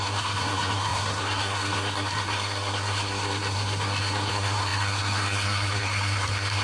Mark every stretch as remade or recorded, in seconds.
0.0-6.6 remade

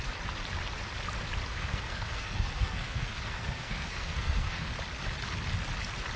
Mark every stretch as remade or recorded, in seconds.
0.0-1.5 recorded; 1.5-4.7 remade; 4.7-6.2 recorded